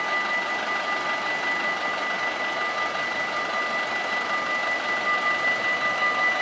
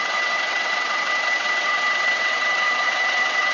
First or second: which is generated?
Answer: second